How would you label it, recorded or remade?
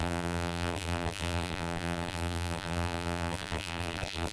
remade